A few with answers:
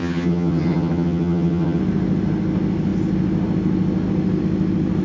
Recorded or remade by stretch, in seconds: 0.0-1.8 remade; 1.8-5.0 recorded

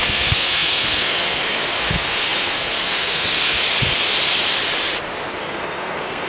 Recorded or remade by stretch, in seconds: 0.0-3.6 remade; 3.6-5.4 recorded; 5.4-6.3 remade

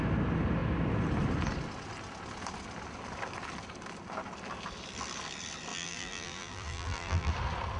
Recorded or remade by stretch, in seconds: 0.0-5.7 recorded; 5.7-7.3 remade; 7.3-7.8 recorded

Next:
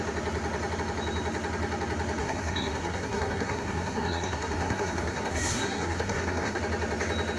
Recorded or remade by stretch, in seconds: 0.0-2.2 recorded; 2.2-6.6 remade; 6.6-7.4 recorded